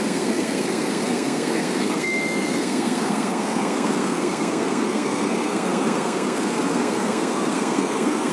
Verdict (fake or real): fake